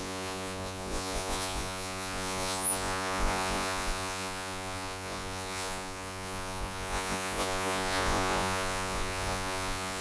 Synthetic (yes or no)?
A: yes